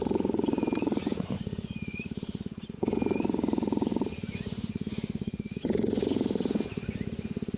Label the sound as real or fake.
fake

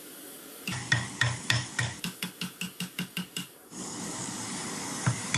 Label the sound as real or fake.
fake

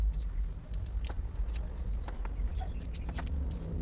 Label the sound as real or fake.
real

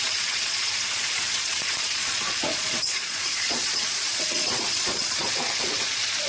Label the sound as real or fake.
fake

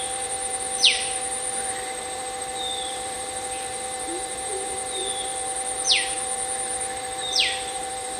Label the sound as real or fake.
fake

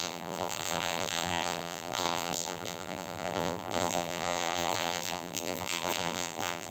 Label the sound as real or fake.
fake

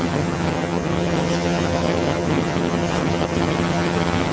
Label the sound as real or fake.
fake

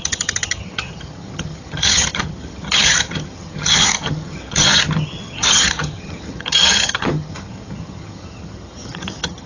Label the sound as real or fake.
fake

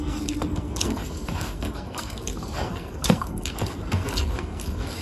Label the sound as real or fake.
fake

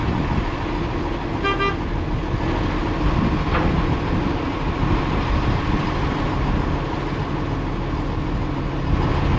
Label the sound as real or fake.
real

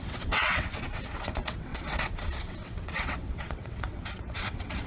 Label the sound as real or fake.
fake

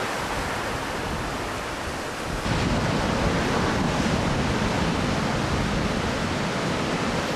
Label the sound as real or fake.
real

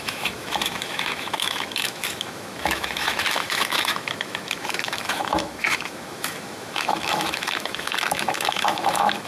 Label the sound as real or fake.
fake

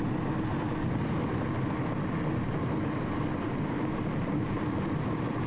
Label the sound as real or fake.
real